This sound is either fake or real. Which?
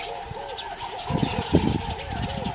real